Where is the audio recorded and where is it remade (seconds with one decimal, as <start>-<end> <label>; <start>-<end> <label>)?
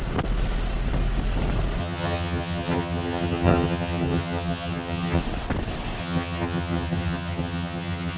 0.0-1.8 recorded; 1.8-5.2 remade; 5.2-6.0 recorded; 6.0-8.2 remade